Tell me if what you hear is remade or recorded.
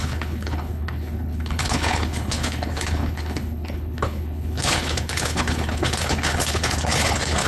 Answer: remade